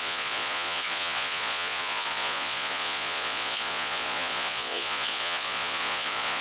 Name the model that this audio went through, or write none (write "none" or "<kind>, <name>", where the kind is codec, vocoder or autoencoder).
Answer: vocoder, Vocos